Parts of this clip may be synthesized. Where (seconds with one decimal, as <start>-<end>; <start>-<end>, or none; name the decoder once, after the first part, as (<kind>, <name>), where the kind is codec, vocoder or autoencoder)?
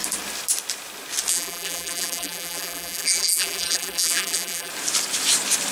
1.3-4.7 (vocoder, BigVGAN v2)